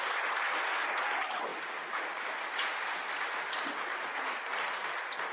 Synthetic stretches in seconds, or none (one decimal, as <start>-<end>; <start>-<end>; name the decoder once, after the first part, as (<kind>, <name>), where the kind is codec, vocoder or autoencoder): none